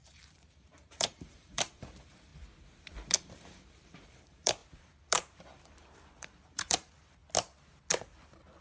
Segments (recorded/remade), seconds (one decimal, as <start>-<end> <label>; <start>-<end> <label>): 0.0-2.3 remade; 2.3-3.3 recorded; 3.3-7.2 remade; 7.2-8.6 recorded